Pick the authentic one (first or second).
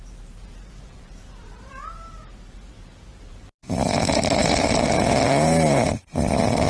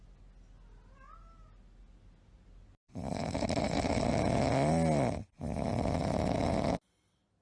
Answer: second